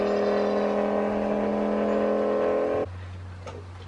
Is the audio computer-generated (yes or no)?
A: no